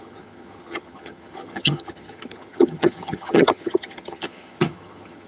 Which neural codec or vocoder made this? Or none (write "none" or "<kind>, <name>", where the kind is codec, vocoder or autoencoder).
vocoder, HiFi-GAN